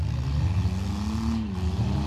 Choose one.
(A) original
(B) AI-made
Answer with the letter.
A